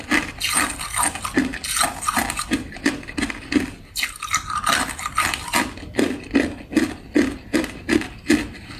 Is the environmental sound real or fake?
real